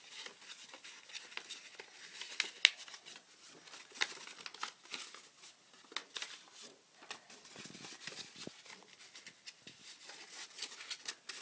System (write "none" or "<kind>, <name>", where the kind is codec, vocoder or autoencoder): none